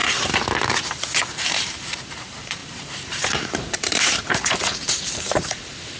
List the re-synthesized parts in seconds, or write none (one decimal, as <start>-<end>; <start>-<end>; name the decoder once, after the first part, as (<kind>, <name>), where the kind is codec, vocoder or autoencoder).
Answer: 0.9-6.0 (vocoder, BigVGAN v2)